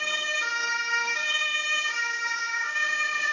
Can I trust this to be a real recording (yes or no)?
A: no